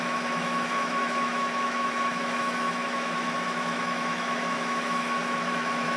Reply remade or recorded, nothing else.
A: remade